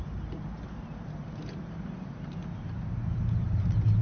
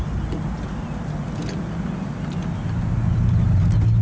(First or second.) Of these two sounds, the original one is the second